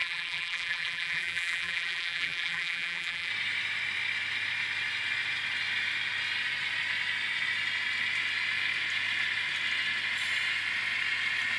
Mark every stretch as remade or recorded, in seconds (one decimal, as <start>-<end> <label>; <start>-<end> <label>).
0.0-3.3 remade; 3.3-11.6 recorded